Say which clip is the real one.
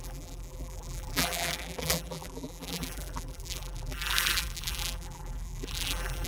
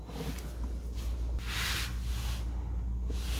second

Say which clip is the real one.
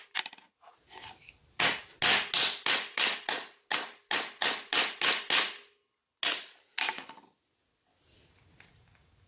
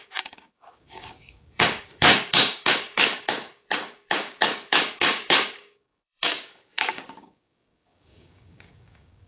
first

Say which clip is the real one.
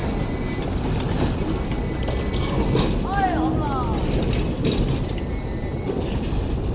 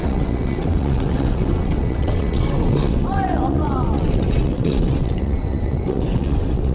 first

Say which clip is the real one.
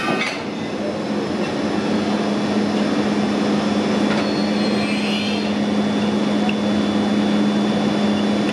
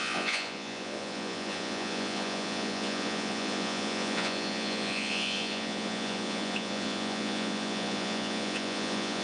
first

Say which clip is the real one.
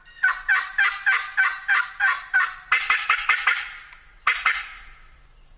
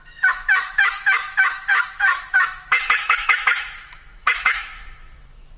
first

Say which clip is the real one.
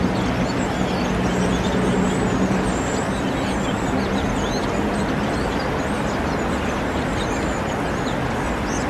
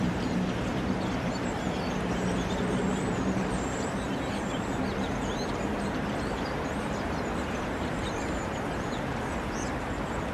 first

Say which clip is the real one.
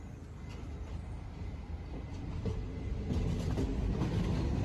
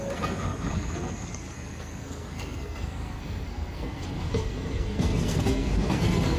first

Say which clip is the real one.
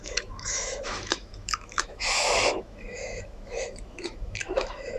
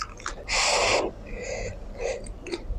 second